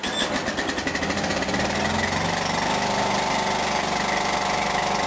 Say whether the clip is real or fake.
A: real